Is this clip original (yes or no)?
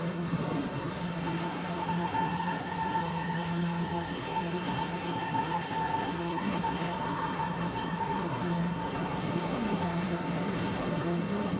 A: no